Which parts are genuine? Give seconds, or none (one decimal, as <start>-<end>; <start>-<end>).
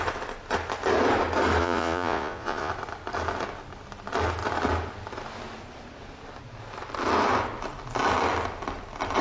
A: 0.0-1.6; 2.7-9.2